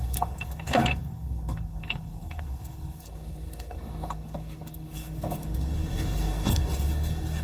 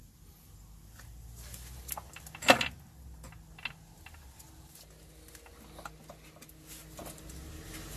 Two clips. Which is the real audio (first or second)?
second